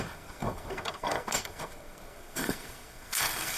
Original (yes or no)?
no